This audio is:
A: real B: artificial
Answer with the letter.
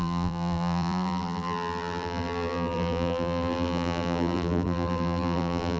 B